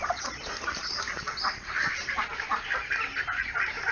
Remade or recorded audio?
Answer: remade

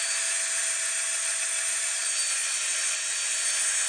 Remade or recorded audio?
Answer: recorded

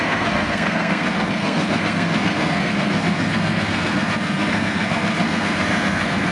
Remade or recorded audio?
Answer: remade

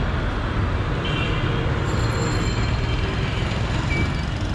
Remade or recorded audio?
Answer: recorded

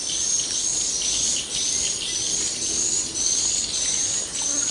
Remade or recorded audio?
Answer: recorded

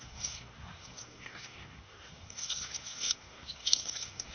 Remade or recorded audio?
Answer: remade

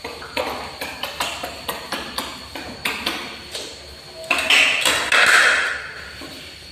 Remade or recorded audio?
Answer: recorded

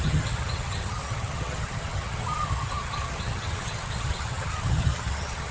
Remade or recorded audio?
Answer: remade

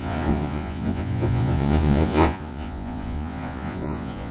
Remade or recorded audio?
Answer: remade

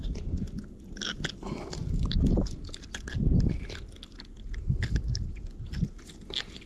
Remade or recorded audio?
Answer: recorded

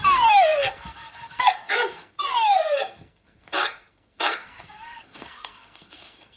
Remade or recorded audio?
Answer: remade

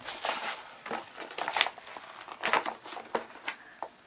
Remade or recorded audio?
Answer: recorded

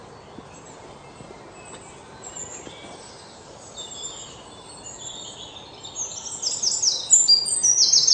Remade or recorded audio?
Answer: recorded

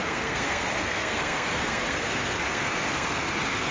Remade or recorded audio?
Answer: remade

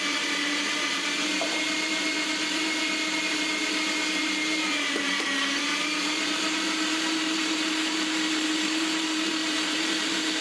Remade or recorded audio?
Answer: remade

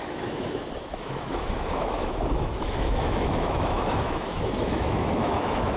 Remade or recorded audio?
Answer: remade